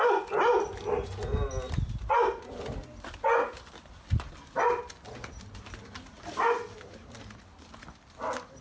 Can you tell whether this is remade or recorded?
recorded